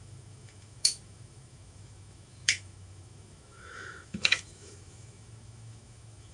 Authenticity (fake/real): fake